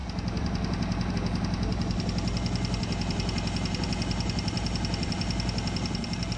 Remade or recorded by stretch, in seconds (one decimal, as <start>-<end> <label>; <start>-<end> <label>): 0.0-6.4 recorded